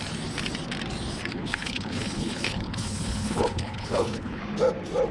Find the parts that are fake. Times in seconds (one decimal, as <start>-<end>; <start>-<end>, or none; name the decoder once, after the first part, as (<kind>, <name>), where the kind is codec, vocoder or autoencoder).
1.3-4.4 (codec, HILCodec)